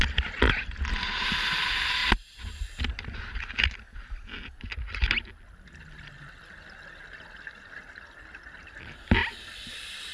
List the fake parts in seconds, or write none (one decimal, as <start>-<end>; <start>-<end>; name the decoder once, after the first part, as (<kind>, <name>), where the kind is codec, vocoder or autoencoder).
none